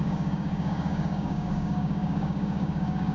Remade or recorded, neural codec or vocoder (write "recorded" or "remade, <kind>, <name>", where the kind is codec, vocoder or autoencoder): remade, codec, DAC